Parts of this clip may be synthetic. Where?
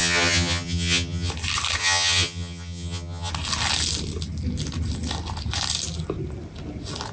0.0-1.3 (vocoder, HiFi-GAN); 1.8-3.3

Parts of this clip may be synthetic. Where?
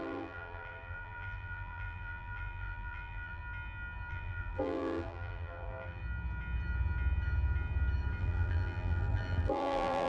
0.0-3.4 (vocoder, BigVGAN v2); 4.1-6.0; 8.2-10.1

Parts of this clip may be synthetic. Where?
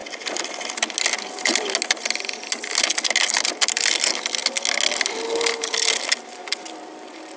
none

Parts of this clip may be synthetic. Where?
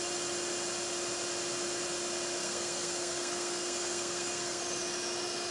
2.4-4.6 (codec, SNAC)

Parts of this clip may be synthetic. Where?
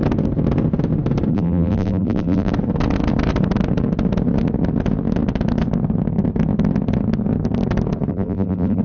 1.3-2.5 (vocoder, BigVGAN v2); 8.1-8.8